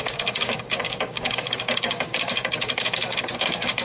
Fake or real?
fake